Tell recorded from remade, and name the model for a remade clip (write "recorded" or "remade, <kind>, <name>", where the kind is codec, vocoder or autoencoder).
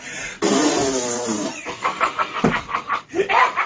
remade, vocoder, BigVGAN v2